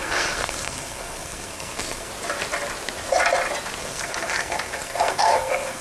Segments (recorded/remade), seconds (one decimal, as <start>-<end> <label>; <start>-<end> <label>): 0.0-2.1 remade; 2.1-3.8 recorded; 3.8-5.8 remade